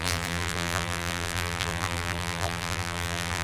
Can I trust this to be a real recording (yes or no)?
no